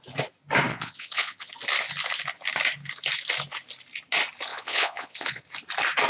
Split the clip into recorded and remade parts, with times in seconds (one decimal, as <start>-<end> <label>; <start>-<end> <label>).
0.0-0.7 recorded; 0.7-1.5 remade; 1.5-4.5 recorded; 4.5-5.4 remade; 5.4-6.1 recorded